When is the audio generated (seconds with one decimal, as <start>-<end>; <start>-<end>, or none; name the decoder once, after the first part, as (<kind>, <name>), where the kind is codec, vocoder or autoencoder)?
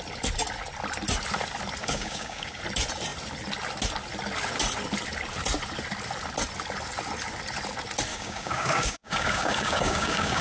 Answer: 1.8-2.6 (codec, DAC); 8.1-10.4